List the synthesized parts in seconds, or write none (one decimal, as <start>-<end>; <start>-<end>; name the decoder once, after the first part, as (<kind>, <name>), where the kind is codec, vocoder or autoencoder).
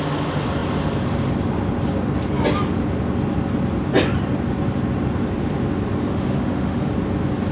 6.0-6.9 (autoencoder, DAC-VAE)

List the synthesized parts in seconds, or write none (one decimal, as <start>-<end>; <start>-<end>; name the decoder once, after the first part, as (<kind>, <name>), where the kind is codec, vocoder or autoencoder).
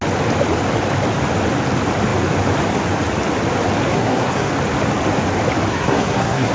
3.9-4.5 (codec, SNAC); 5.7-6.5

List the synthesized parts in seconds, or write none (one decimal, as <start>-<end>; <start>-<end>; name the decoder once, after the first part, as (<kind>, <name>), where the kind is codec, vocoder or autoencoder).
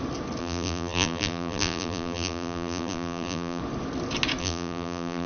0.4-3.6 (vocoder, BigVGAN v2); 4.4-5.3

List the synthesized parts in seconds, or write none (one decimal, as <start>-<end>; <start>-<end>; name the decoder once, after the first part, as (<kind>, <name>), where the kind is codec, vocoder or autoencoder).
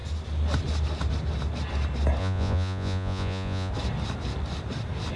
2.2-3.7 (vocoder, Vocos)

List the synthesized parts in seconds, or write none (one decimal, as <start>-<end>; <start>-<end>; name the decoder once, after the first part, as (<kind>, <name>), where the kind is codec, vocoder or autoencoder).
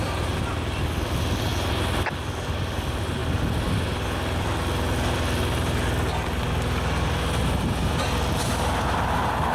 0.0-3.2 (vocoder, BigVGAN v2); 7.9-9.5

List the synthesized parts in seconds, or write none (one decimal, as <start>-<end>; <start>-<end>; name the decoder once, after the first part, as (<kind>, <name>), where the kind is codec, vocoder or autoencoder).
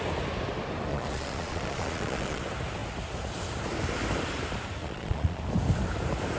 0.9-2.4 (vocoder, Vocos); 4.8-5.4